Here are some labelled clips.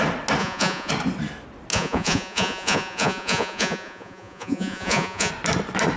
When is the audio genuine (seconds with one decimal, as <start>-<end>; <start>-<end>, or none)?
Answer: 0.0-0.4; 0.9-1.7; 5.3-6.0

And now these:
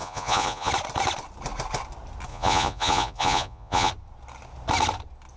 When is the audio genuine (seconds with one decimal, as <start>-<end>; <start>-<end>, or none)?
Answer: 0.7-2.3; 3.9-5.4

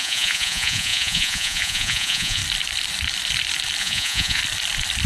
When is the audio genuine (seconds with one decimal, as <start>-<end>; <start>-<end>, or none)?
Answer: 2.4-3.8; 4.4-5.1